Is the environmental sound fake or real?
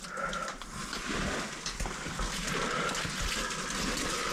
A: real